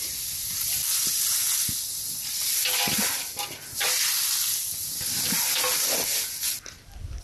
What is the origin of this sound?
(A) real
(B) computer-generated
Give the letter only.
A